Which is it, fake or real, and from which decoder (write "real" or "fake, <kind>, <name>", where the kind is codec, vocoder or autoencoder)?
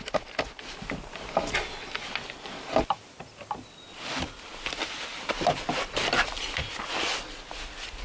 real